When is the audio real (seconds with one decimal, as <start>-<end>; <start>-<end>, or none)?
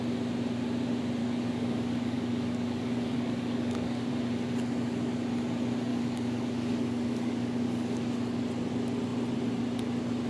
0.0-1.2; 4.1-5.9; 8.0-10.3